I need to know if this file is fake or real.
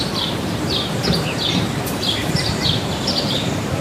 fake